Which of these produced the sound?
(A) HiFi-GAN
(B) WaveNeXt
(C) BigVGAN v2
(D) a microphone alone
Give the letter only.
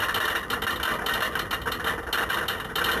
D